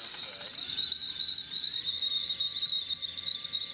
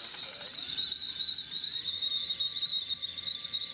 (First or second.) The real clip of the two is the first